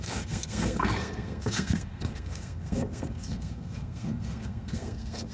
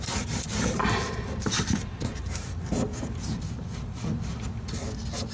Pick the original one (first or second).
second